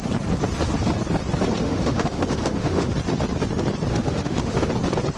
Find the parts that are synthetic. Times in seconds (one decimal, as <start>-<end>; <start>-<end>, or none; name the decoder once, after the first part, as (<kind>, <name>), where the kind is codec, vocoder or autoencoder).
1.6-2.9 (autoencoder, DAC-VAE); 3.9-4.7